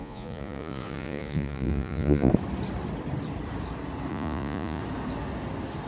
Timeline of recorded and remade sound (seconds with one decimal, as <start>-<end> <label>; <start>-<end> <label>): 0.0-2.3 remade; 2.3-4.1 recorded; 4.1-4.8 remade; 4.8-5.9 recorded